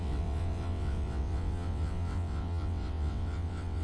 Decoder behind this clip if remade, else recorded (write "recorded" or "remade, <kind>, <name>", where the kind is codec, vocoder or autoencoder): remade, vocoder, WaveNeXt